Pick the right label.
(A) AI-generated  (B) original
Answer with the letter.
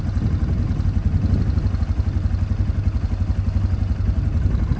B